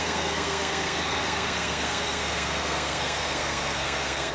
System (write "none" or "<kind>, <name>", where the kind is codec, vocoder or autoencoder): codec, SNAC